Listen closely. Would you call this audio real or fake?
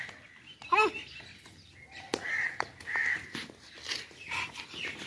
real